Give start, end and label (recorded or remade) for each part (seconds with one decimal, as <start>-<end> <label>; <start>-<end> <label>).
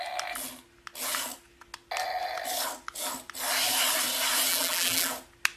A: 0.0-4.5 recorded; 4.5-5.1 remade; 5.1-5.6 recorded